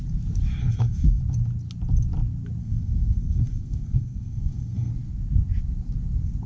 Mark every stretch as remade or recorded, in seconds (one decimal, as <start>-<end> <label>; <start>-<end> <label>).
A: 0.0-0.6 recorded; 0.6-1.2 remade; 1.2-2.6 recorded; 2.6-4.9 remade; 4.9-6.5 recorded